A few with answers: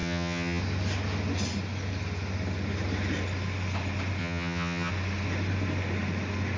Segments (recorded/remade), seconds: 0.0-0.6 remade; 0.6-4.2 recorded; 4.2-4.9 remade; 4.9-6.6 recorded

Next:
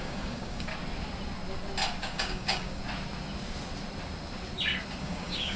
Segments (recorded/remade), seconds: 0.0-0.7 remade; 0.7-2.0 recorded; 2.0-2.8 remade; 2.8-5.0 recorded; 5.0-5.6 remade

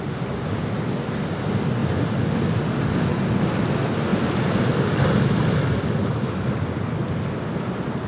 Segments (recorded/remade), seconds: 0.0-8.1 recorded

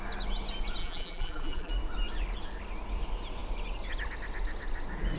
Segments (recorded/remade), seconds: 0.0-0.8 recorded; 0.8-1.7 remade; 1.7-5.2 recorded

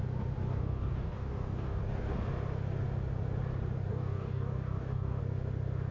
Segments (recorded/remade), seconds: 0.0-0.5 recorded; 0.5-1.8 remade; 1.8-3.9 recorded; 3.9-5.2 remade; 5.2-5.9 recorded

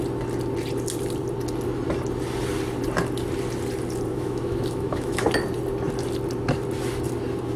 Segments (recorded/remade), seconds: 0.0-4.1 recorded; 4.1-5.3 remade; 5.3-7.6 recorded

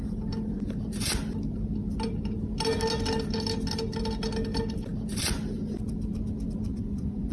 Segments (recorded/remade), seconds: 0.0-6.7 recorded; 6.7-7.3 remade

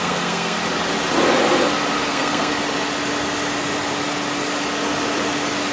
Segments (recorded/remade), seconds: 0.0-0.6 remade; 0.6-2.1 recorded; 2.1-2.5 remade; 2.5-5.7 recorded